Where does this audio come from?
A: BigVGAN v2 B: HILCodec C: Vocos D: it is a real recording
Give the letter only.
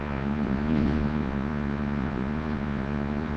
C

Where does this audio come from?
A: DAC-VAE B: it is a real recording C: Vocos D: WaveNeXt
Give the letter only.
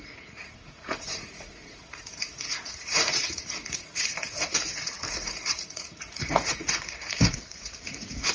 C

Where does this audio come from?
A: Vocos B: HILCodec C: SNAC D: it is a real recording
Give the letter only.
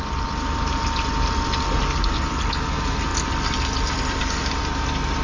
D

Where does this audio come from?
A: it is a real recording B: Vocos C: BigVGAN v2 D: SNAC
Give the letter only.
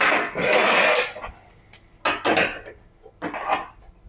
A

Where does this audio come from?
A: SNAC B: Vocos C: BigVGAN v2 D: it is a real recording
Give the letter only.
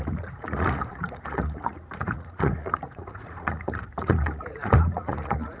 B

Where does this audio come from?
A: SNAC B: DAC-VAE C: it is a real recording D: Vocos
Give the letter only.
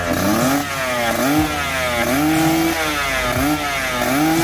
C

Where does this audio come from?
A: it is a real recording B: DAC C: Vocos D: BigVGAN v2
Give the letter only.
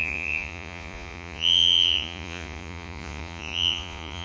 C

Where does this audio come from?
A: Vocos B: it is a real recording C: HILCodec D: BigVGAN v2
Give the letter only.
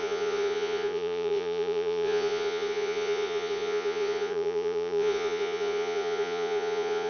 A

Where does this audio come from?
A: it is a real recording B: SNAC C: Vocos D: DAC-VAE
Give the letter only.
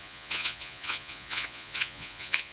C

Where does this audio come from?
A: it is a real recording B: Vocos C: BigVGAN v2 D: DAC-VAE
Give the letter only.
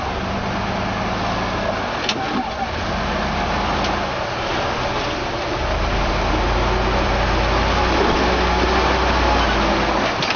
A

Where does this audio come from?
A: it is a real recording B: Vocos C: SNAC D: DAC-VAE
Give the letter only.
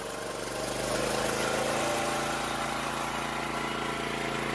A